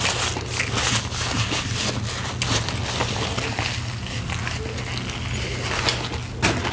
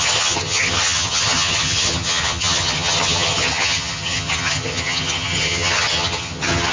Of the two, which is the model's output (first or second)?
second